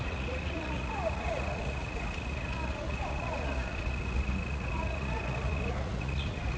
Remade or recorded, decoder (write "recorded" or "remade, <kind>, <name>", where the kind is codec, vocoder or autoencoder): remade, vocoder, Vocos